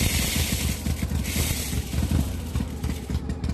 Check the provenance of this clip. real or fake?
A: real